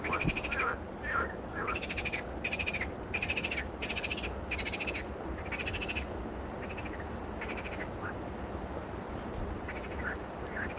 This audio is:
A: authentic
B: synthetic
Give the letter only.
A